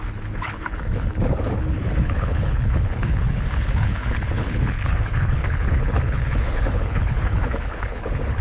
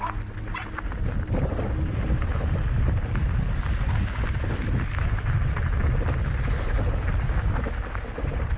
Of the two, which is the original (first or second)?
second